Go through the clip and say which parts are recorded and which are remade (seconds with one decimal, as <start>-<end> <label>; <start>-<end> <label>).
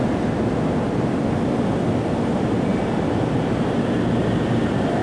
0.0-5.0 recorded